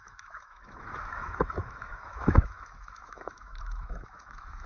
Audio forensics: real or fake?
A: fake